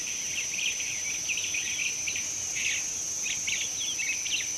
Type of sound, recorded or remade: recorded